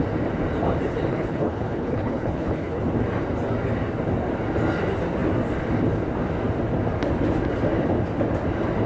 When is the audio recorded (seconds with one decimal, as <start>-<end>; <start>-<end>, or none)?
0.0-1.1; 2.8-8.9